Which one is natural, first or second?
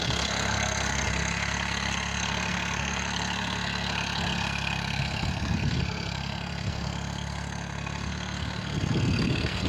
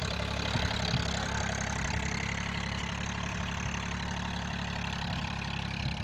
second